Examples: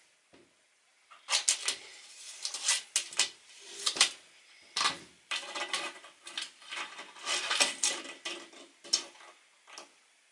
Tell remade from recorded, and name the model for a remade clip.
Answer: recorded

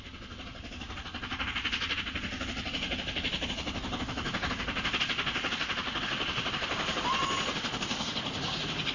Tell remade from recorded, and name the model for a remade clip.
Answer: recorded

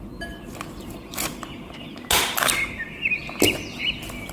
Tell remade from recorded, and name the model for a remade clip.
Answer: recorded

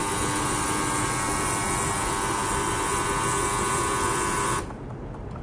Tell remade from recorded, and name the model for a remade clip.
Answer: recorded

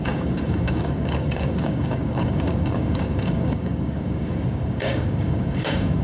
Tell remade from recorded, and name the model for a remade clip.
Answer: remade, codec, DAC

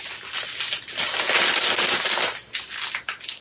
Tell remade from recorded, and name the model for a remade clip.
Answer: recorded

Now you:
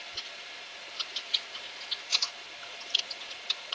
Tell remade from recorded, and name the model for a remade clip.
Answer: remade, vocoder, Vocos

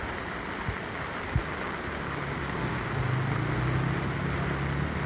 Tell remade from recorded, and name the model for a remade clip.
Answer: recorded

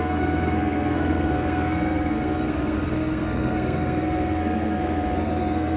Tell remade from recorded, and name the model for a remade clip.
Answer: remade, codec, SNAC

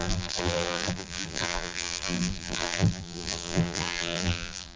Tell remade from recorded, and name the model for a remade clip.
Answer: remade, vocoder, BigVGAN v2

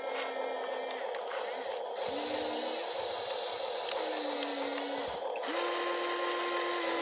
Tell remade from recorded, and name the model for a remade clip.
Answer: recorded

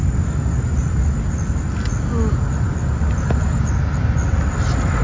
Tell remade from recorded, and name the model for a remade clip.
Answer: recorded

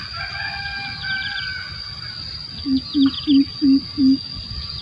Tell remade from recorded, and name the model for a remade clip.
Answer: recorded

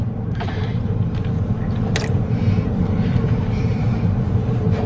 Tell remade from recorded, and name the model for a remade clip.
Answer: remade, vocoder, BigVGAN v2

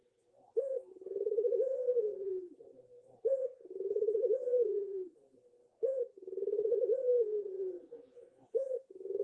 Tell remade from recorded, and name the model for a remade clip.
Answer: remade, vocoder, Vocos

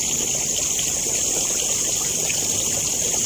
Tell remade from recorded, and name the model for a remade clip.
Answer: recorded